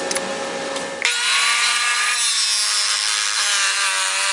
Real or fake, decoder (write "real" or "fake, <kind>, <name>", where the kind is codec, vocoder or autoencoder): real